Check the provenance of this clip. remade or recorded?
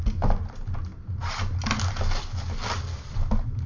recorded